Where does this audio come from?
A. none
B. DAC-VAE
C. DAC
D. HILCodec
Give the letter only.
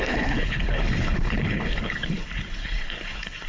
D